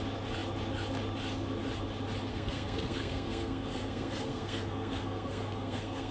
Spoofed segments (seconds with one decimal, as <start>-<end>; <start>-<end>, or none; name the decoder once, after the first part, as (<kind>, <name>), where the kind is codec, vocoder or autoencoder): 2.3-6.1 (codec, SNAC)